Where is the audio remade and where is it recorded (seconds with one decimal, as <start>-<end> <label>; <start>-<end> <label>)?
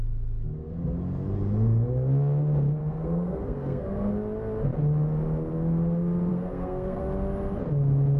0.0-2.8 recorded; 2.8-4.1 remade; 4.1-6.3 recorded; 6.3-7.0 remade; 7.0-8.2 recorded